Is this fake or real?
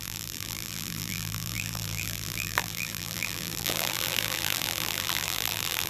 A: fake